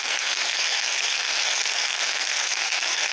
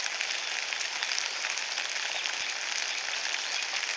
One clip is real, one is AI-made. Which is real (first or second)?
second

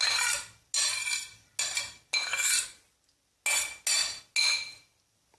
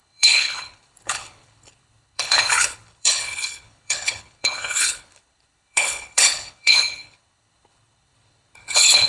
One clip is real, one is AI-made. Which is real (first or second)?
first